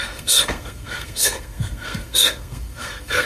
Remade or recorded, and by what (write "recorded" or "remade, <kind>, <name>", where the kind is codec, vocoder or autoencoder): remade, codec, SNAC